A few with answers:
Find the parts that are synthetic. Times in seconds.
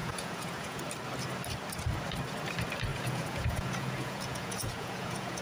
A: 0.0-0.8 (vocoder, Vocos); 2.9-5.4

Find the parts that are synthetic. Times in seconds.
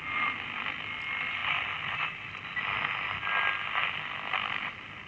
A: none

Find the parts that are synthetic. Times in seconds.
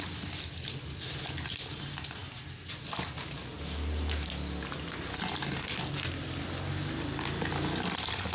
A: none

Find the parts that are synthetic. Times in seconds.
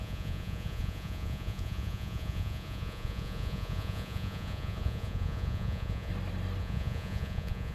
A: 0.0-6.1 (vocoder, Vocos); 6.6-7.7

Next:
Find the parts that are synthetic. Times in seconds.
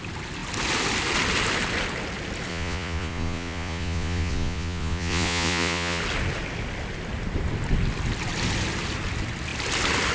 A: 2.5-6.0 (vocoder, Vocos)